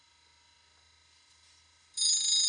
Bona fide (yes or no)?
yes